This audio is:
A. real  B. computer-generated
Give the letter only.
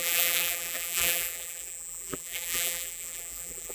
B